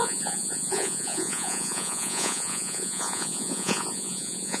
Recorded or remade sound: remade